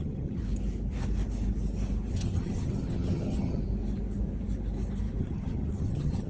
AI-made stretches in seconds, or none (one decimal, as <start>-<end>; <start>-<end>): 0.0-0.4; 2.1-3.6; 5.2-6.3